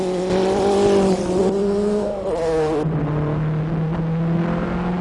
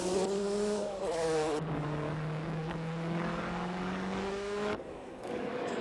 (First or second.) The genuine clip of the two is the first